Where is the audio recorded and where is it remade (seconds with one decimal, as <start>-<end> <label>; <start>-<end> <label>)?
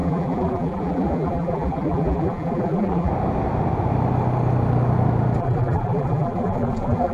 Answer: 0.0-3.1 remade; 3.1-5.4 recorded; 5.4-7.1 remade